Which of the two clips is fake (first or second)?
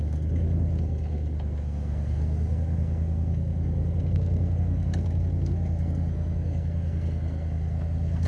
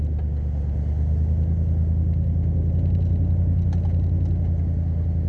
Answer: first